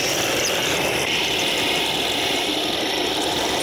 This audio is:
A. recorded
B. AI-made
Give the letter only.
B